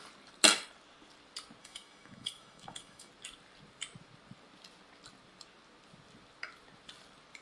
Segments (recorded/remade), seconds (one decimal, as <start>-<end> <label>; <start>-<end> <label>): 0.0-1.6 recorded; 1.6-3.1 remade; 3.1-7.4 recorded